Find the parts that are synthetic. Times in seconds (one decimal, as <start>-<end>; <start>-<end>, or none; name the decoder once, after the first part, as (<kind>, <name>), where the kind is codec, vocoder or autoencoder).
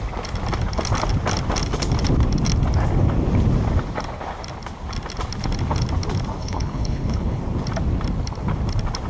6.4-7.4 (codec, HILCodec)